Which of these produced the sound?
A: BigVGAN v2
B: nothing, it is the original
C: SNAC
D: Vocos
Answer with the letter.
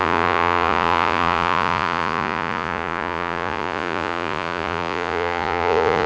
D